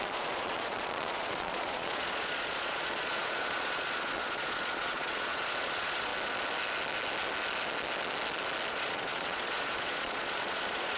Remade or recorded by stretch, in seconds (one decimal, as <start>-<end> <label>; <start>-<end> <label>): 0.0-6.1 remade; 6.1-8.7 recorded; 8.7-11.0 remade